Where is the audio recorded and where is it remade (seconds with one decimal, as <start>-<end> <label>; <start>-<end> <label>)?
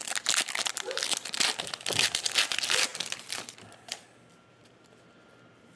0.0-5.8 recorded